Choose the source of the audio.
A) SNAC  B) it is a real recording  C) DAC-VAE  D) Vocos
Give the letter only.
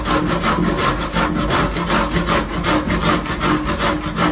B